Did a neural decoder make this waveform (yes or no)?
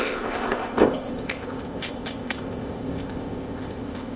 yes